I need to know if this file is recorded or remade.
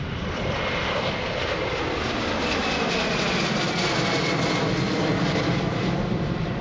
recorded